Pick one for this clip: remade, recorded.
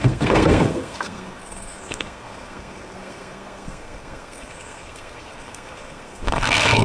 remade